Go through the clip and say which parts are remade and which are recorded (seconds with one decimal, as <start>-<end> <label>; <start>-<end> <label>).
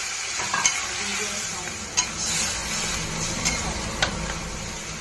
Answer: 0.0-5.0 recorded